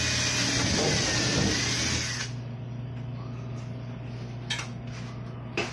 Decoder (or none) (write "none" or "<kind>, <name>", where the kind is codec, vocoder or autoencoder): none